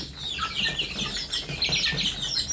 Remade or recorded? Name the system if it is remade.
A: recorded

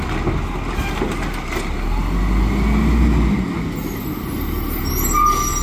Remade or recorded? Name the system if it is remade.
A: recorded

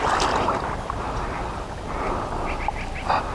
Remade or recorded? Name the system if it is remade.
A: recorded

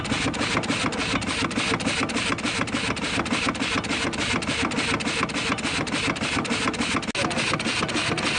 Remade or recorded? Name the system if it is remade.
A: recorded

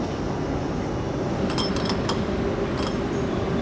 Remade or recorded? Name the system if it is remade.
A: recorded